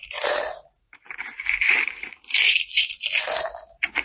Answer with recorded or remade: remade